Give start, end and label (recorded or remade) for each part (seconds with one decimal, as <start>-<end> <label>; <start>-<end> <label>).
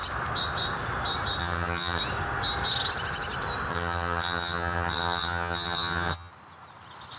0.0-1.4 recorded; 1.4-2.0 remade; 2.0-3.7 recorded; 3.7-6.3 remade; 6.3-7.2 recorded